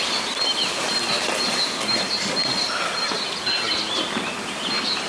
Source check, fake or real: real